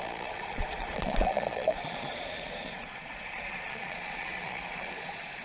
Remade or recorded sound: remade